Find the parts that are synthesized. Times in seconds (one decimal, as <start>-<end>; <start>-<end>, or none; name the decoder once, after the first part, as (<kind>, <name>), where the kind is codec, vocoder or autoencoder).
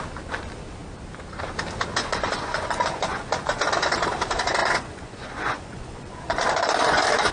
2.0-3.6 (vocoder, Vocos); 4.6-7.3